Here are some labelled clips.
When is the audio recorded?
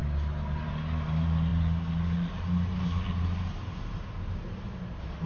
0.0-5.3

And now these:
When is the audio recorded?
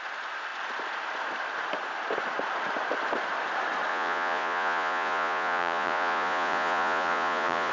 0.0-3.9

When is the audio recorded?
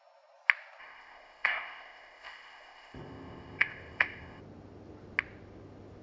0.0-0.8; 4.4-6.0